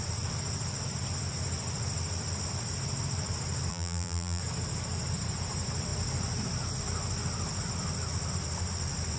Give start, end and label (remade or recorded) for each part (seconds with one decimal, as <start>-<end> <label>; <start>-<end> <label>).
0.0-3.7 recorded; 3.7-4.4 remade; 4.4-9.2 recorded